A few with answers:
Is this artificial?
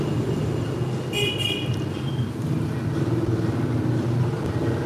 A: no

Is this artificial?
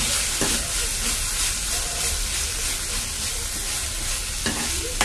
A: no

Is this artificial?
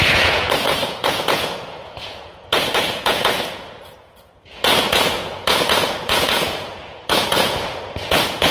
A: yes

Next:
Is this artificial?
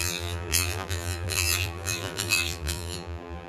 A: yes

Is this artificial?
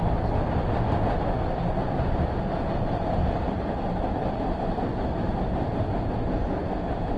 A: no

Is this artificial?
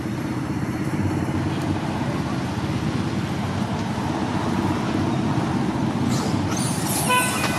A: no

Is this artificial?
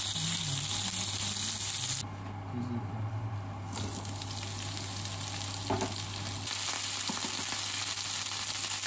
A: no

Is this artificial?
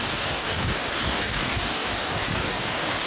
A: yes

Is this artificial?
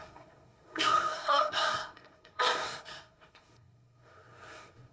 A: yes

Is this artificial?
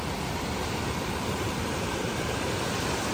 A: yes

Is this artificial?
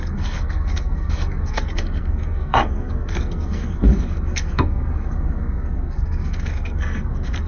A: yes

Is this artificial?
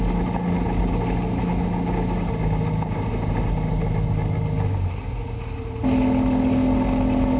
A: no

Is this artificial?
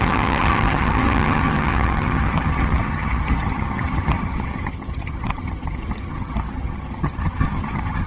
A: yes